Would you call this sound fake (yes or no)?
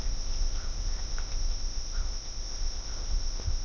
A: yes